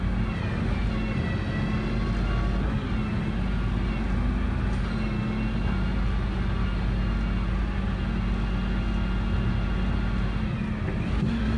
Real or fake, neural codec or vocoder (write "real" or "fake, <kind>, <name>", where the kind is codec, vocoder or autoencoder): real